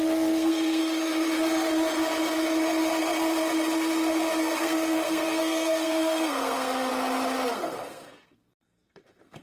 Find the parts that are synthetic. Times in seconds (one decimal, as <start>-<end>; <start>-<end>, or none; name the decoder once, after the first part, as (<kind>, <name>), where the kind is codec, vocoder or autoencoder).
0.0-0.8 (codec, SNAC); 4.4-6.9; 7.5-9.4